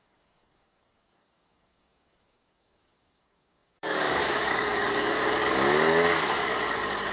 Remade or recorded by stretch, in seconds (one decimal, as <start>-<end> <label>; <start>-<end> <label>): 0.0-7.1 remade